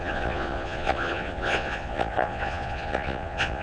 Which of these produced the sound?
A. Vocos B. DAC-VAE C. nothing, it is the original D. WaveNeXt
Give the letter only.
A